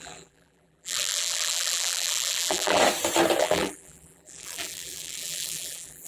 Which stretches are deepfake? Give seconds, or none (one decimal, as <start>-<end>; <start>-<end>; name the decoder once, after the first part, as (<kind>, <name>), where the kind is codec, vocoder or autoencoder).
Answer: 0.0-2.8 (vocoder, BigVGAN v2); 3.4-6.1